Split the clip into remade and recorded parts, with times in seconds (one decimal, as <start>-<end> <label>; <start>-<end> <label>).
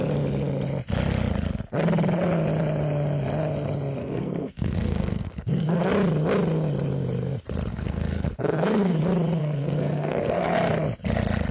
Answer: 0.0-4.0 recorded; 4.0-5.9 remade; 5.9-7.7 recorded; 7.7-9.0 remade; 9.0-9.4 recorded; 9.4-10.4 remade; 10.4-11.5 recorded